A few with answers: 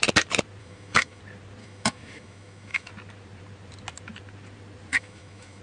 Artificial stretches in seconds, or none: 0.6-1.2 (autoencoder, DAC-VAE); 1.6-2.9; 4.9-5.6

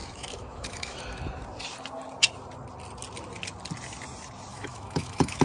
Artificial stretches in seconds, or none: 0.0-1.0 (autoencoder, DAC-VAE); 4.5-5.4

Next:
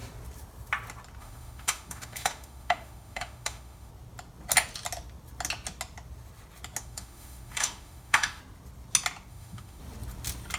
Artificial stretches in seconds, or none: 1.2-3.9 (autoencoder, DAC-VAE); 6.8-8.4; 9.3-9.8